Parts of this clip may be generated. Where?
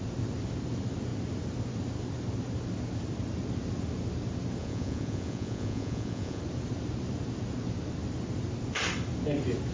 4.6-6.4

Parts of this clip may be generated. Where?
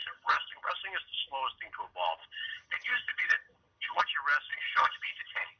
0.0-0.7; 2.2-4.0; 4.5-5.6